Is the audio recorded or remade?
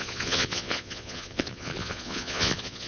remade